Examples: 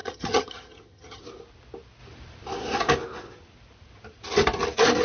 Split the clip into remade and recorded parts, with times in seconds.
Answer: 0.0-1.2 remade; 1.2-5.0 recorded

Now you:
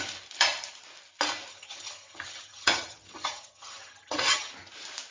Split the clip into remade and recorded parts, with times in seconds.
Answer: 0.0-1.5 recorded; 1.5-4.5 remade; 4.5-5.1 recorded

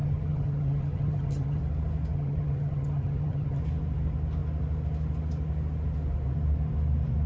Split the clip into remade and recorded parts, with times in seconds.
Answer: 0.0-1.6 remade; 1.6-2.1 recorded; 2.1-3.6 remade; 3.6-7.3 recorded

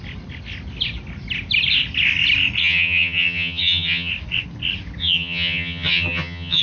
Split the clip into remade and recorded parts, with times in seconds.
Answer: 0.0-2.6 recorded; 2.6-4.1 remade; 4.1-5.0 recorded; 5.0-6.6 remade

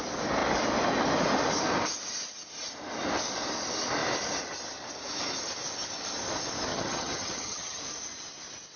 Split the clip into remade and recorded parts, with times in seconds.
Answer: 0.0-6.7 recorded; 6.7-7.8 remade; 7.8-8.8 recorded

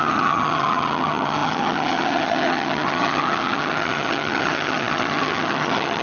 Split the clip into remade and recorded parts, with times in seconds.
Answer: 0.0-6.0 remade

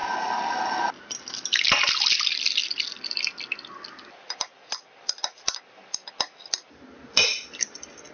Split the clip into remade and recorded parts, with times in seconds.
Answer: 0.0-8.1 recorded